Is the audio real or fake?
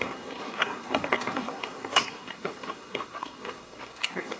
fake